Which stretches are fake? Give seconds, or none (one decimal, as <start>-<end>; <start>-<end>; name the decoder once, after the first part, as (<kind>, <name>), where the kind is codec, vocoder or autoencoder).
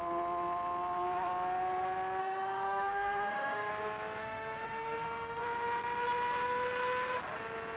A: 2.2-3.7 (autoencoder, DAC-VAE); 4.2-5.4